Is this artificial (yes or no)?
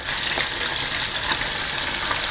no